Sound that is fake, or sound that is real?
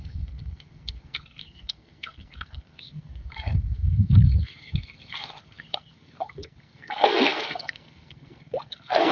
fake